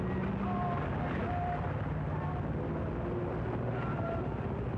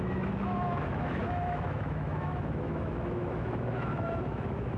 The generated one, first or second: second